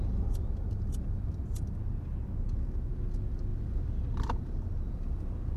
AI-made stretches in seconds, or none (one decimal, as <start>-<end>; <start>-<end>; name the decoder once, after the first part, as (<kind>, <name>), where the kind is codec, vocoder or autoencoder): none